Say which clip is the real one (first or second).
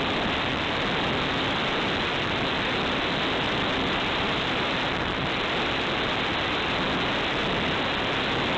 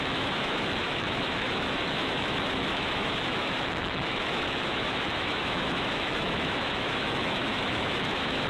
first